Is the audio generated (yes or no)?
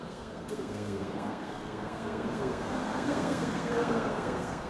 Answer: yes